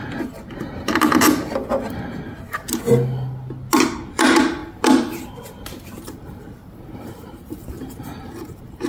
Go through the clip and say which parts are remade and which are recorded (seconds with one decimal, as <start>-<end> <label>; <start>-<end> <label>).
0.0-4.1 recorded; 4.1-4.6 remade; 4.6-6.0 recorded; 6.0-8.9 remade